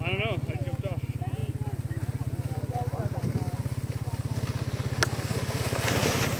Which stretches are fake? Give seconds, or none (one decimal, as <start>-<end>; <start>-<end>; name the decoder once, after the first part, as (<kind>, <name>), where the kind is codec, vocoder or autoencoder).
none